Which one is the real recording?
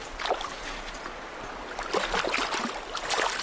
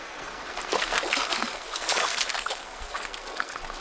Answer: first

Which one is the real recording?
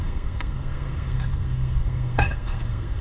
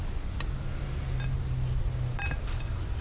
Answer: second